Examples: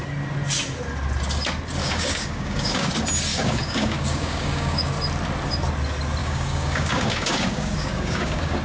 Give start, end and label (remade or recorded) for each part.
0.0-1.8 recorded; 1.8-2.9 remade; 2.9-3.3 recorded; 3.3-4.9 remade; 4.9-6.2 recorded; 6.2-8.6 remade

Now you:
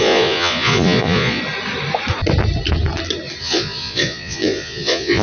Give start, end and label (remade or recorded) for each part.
0.0-1.4 remade; 1.4-3.4 recorded; 3.4-5.2 remade

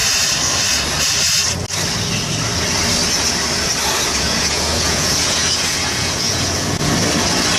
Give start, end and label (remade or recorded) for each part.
0.0-4.1 recorded; 4.1-6.9 remade; 6.9-7.6 recorded

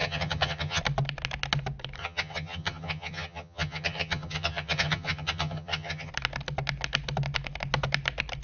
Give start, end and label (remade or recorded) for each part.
0.0-0.8 remade; 0.8-2.0 recorded; 2.0-6.1 remade; 6.1-8.4 recorded

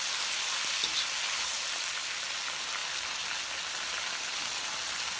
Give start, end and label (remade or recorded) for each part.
0.0-5.2 recorded

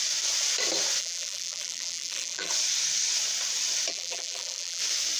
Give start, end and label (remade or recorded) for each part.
0.0-1.0 recorded; 1.0-2.5 remade; 2.5-3.9 recorded; 3.9-4.8 remade; 4.8-5.2 recorded